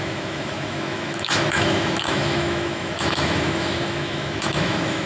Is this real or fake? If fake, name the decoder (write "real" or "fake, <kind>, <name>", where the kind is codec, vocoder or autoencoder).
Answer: fake, autoencoder, DAC-VAE